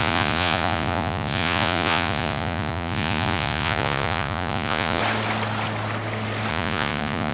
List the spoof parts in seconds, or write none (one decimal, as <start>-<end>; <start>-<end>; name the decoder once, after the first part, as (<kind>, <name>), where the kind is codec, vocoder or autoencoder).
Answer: 0.0-5.0 (vocoder, Vocos); 6.5-7.3